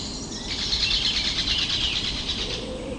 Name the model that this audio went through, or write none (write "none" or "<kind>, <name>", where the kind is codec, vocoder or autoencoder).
none